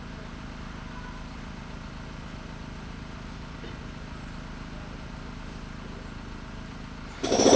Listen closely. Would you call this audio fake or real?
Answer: real